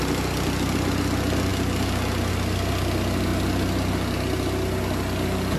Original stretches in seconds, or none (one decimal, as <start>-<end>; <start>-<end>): 0.0-5.6